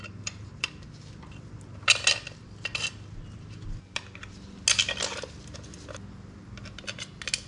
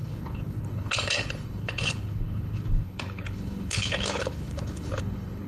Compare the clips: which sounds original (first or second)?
first